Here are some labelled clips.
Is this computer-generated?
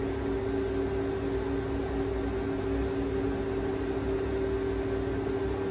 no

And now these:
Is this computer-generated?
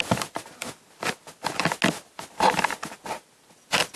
no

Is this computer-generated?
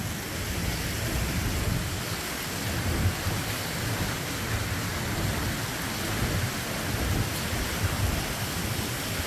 no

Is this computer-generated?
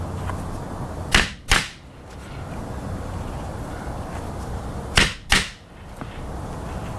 no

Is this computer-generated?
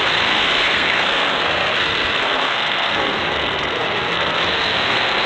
yes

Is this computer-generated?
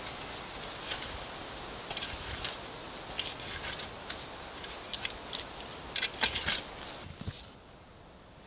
no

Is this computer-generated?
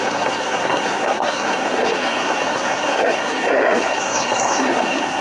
yes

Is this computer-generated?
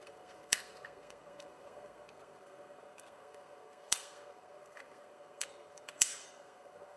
yes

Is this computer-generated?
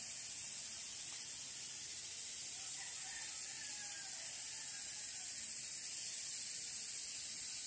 no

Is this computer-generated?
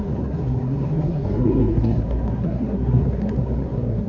yes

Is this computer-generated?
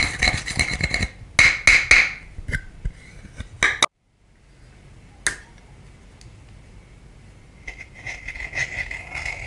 no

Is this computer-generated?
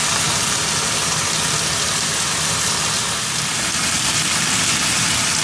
no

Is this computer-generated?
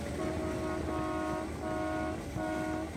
no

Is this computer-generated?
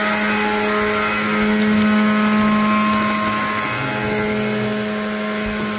no